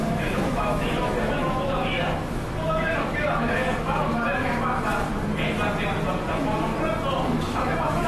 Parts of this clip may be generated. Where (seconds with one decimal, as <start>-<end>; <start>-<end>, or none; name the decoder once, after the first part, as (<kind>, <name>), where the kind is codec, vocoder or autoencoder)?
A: 0.0-5.1 (autoencoder, DAC-VAE); 6.3-6.7; 7.2-8.1